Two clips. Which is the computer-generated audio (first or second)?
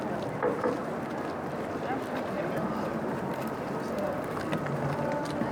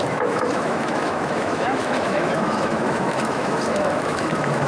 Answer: second